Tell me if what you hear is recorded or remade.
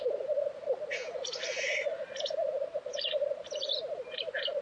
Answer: recorded